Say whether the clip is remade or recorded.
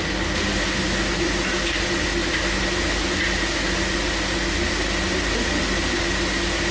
recorded